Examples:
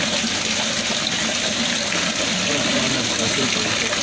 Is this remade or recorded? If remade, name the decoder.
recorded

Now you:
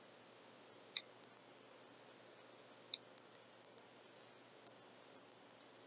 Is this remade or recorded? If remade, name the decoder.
recorded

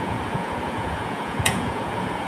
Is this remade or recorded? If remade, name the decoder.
remade, vocoder, Vocos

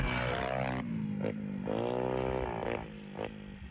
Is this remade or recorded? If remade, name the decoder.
recorded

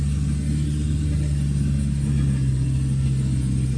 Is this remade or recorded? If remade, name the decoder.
recorded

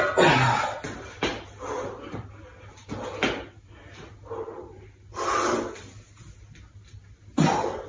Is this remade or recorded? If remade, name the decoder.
recorded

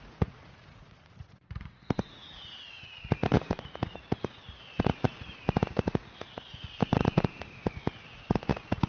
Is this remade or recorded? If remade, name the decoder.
remade, vocoder, Vocos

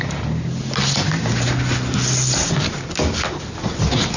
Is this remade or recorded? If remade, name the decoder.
recorded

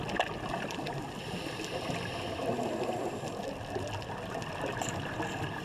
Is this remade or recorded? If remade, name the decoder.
recorded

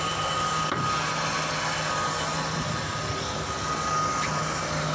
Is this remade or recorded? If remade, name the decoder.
recorded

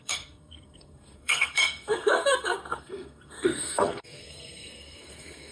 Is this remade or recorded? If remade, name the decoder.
remade, codec, SNAC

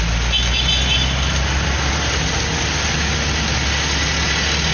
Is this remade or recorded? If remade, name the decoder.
recorded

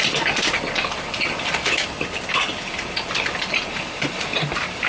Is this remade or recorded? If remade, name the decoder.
recorded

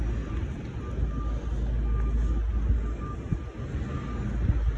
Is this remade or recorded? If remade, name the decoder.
recorded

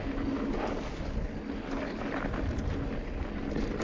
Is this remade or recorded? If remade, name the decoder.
recorded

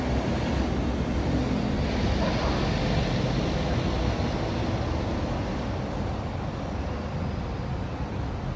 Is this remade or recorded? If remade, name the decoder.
recorded